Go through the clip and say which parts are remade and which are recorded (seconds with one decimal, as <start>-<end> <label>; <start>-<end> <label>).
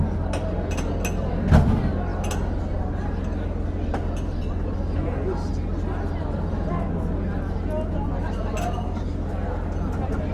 0.0-10.3 recorded